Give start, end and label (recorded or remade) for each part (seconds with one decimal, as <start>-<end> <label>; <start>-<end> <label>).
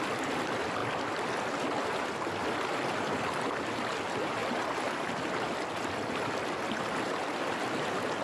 0.0-4.4 recorded; 4.4-5.5 remade; 5.5-8.2 recorded